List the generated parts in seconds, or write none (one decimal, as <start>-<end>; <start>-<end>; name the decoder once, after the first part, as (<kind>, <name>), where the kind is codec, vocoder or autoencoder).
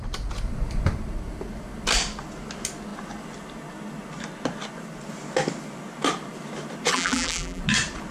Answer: 6.9-7.6 (vocoder, BigVGAN v2)